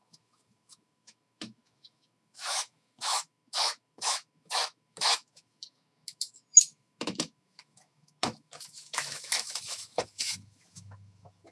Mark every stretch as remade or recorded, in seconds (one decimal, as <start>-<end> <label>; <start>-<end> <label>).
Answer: 0.0-11.5 remade